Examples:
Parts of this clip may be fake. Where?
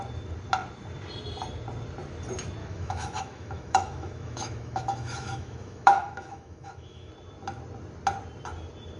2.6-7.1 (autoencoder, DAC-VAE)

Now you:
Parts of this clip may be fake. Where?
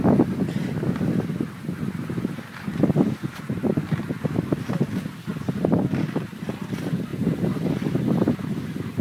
5.3-5.9 (vocoder, BigVGAN v2)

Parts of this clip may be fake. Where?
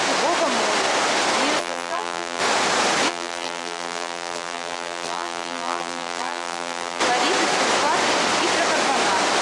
1.6-2.4 (vocoder, BigVGAN v2); 3.1-7.0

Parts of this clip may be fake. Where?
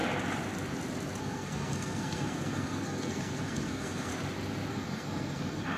1.2-4.1 (codec, SNAC); 4.7-5.8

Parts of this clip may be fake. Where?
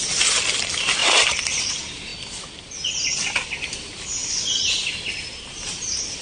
none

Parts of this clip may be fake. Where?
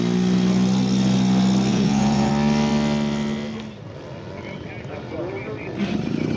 1.7-2.3 (vocoder, Vocos)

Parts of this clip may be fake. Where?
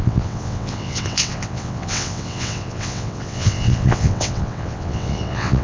0.0-5.6 (vocoder, WaveNeXt)